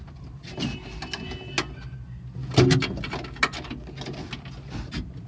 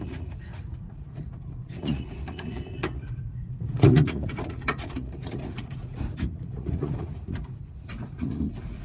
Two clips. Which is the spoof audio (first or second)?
second